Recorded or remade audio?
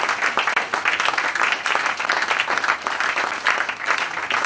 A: recorded